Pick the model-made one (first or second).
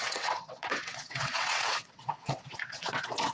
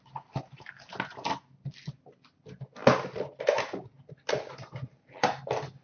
first